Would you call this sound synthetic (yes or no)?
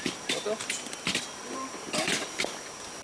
no